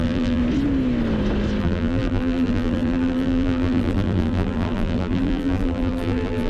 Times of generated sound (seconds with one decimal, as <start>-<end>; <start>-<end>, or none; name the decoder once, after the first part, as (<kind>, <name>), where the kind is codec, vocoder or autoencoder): 0.0-0.4 (vocoder, BigVGAN v2); 1.6-6.5